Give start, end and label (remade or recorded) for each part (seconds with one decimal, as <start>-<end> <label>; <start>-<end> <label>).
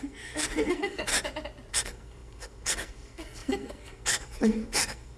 0.0-1.1 remade; 1.1-1.7 recorded; 1.7-5.2 remade